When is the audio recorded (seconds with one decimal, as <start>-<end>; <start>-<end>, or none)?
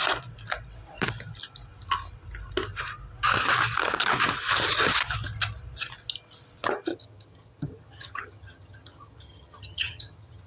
0.0-6.9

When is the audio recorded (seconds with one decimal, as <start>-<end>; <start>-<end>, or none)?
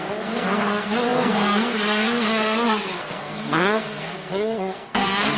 none